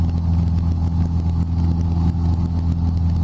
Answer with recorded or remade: recorded